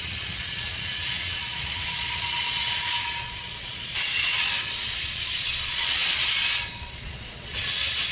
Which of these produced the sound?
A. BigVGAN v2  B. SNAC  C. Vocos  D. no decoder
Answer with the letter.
C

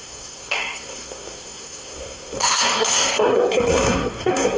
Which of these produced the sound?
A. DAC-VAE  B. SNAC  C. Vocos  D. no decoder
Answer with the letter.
B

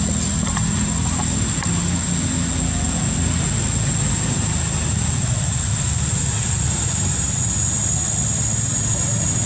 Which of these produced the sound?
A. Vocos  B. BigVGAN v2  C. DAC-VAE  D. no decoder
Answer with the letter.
D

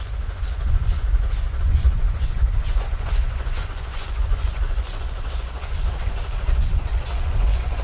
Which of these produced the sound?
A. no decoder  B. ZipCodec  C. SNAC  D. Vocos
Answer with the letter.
D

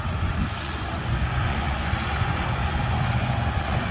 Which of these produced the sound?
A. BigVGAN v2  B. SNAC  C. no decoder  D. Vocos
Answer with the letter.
D